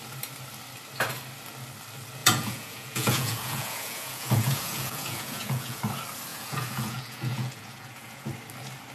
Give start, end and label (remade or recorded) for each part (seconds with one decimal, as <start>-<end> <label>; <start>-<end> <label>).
0.0-2.2 recorded; 2.2-5.8 remade; 5.8-6.3 recorded; 6.3-8.3 remade; 8.3-8.9 recorded